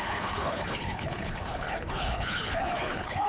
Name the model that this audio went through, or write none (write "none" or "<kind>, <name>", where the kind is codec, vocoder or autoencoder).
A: codec, HILCodec